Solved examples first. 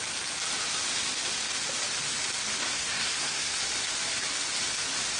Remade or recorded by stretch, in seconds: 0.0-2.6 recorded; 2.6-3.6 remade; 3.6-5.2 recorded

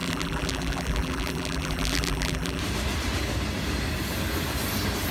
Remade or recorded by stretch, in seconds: 0.0-2.6 remade; 2.6-5.1 recorded